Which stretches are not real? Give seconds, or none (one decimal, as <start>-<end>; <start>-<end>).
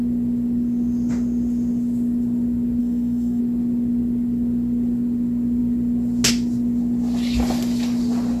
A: 2.8-3.4